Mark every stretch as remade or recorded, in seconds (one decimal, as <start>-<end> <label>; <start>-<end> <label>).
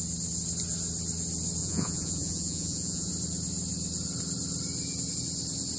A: 0.0-1.6 recorded; 1.6-3.1 remade; 3.1-5.8 recorded